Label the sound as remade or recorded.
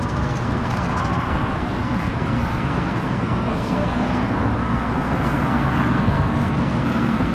remade